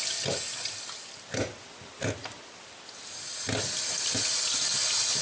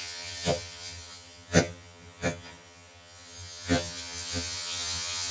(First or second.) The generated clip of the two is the second